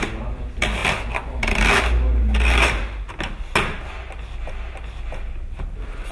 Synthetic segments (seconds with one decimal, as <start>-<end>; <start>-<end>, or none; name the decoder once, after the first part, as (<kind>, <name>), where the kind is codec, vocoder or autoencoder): none